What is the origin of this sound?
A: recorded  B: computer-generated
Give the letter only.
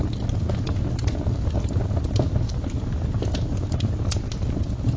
A